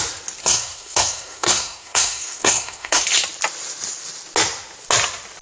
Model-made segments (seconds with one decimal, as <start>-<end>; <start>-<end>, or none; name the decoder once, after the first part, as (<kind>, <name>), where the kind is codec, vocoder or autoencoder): 0.4-3.0 (codec, SNAC)